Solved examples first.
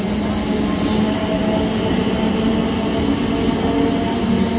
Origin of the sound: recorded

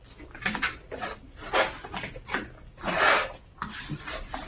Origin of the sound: recorded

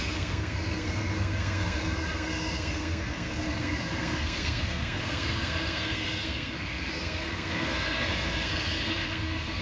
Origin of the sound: remade